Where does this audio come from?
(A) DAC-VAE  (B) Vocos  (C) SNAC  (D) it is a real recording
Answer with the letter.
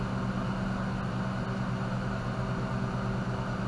D